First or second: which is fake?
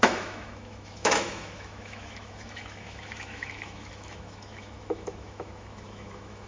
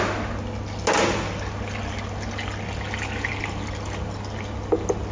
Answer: first